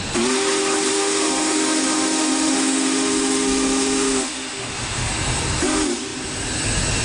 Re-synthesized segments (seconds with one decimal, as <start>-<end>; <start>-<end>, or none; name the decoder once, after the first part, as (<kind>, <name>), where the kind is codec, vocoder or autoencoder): 0.9-5.1 (autoencoder, DAC-VAE)